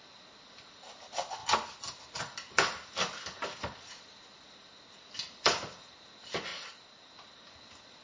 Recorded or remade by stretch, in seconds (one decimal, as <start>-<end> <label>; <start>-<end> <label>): 0.0-8.0 recorded